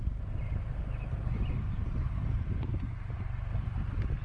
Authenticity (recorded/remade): recorded